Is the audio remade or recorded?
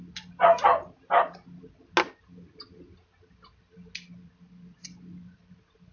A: recorded